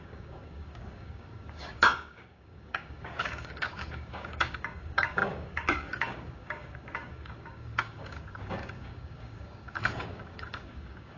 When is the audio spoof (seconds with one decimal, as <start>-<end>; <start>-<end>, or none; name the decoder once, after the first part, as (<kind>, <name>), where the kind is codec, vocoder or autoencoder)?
0.0-11.2 (codec, DAC)

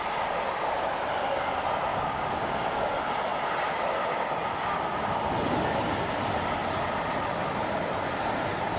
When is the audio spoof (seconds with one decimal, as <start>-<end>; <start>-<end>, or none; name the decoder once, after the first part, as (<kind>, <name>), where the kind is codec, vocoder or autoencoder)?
1.9-2.9 (codec, DAC)

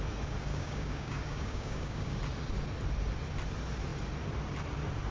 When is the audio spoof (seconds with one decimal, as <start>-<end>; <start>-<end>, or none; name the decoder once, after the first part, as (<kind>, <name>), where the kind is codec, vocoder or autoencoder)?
0.5-2.2 (codec, DAC)

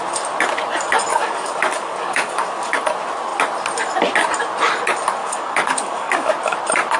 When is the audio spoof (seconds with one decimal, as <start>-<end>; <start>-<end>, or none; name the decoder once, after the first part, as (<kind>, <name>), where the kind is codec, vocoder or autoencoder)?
1.1-2.8 (codec, DAC); 5.2-6.3

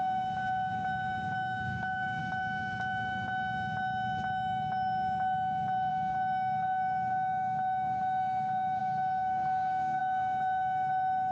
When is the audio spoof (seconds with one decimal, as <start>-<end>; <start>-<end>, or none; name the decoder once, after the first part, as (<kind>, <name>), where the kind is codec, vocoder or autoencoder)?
0.0-2.2 (codec, DAC); 5.9-11.3

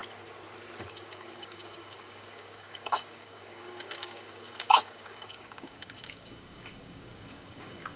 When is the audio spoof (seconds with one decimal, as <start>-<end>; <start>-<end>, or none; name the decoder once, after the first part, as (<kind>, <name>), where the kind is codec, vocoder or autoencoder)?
0.9-8.0 (codec, DAC)